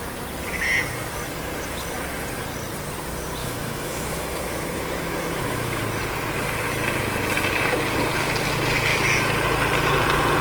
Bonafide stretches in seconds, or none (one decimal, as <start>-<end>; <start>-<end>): 0.0-3.4; 5.8-10.4